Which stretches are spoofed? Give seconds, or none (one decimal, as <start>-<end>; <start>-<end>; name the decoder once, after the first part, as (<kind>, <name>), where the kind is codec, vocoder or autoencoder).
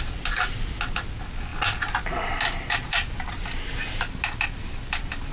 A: none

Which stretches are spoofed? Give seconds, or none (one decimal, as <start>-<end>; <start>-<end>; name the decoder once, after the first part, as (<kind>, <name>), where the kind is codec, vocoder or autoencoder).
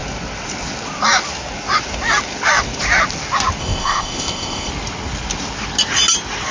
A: 3.6-4.7 (codec, ZipCodec)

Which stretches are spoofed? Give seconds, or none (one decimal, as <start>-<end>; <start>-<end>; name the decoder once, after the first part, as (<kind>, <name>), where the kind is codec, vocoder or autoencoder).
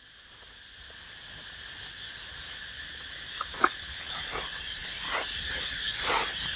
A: none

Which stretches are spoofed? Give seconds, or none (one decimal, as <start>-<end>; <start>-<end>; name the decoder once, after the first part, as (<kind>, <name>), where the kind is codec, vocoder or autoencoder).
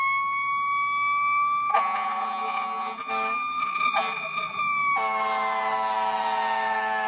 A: 1.7-3.1 (vocoder, Vocos); 3.6-4.6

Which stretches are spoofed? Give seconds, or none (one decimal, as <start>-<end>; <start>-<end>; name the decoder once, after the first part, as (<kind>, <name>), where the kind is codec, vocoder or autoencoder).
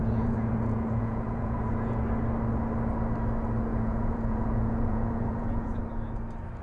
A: 0.0-2.0 (vocoder, Vocos); 3.7-5.8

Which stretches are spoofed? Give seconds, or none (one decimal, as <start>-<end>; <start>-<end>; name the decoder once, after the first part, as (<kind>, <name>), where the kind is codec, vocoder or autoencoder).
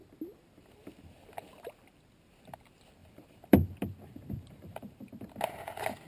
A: 3.0-5.1 (vocoder, BigVGAN v2)